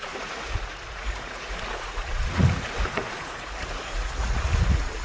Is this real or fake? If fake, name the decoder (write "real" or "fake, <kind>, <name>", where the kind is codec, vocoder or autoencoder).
fake, vocoder, Vocos